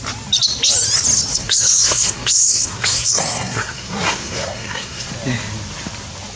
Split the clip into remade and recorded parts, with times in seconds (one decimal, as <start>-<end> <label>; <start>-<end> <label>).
0.0-1.3 recorded; 1.3-5.1 remade; 5.1-6.4 recorded